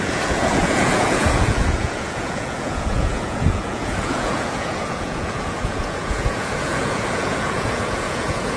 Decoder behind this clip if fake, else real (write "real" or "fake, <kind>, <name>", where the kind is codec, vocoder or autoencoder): fake, vocoder, Vocos